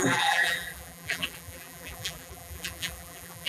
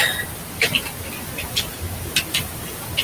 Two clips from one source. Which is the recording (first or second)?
second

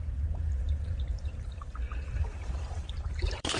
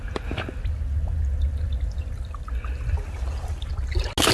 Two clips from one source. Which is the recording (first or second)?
second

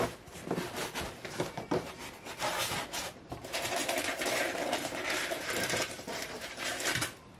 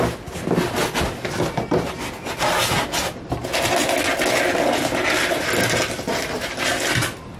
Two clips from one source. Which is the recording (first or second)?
second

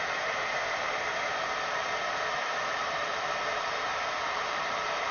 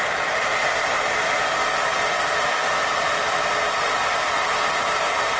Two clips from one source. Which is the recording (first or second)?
second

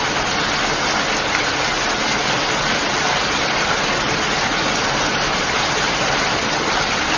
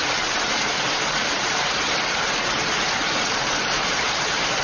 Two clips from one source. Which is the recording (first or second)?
first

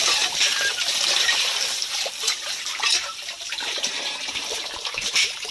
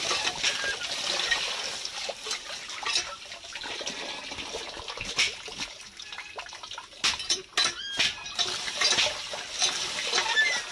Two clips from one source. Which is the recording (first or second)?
second